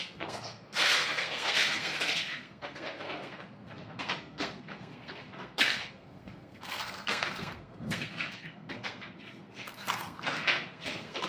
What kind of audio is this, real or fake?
fake